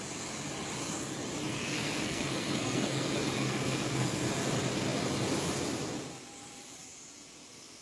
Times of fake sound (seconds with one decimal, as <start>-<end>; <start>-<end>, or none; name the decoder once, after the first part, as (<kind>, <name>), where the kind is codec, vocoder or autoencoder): 1.5-4.2 (codec, SNAC)

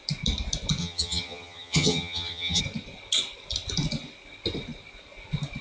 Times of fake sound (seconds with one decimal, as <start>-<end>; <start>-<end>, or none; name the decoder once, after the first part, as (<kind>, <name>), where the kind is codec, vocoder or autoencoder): 0.8-2.6 (vocoder, HiFi-GAN)